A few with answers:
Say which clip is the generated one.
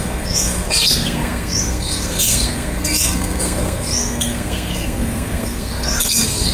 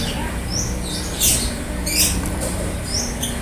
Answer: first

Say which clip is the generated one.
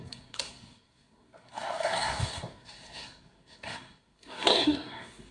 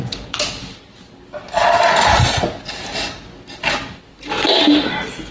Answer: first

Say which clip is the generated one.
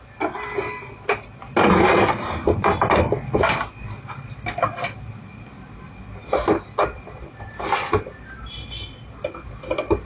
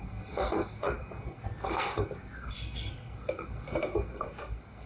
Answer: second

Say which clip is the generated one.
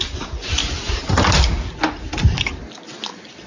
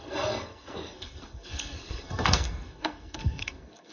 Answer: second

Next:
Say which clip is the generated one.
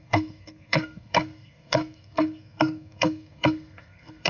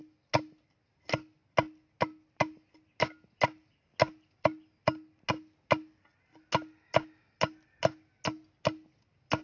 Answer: first